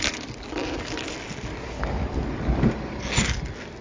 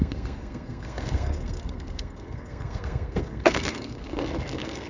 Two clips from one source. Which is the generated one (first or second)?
second